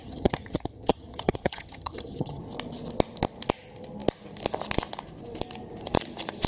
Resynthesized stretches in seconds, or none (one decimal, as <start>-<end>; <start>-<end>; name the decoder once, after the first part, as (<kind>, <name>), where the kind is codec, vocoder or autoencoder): 0.0-2.4 (vocoder, HiFi-GAN)